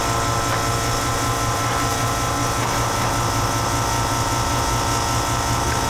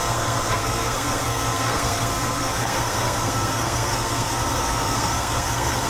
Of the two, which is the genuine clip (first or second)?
first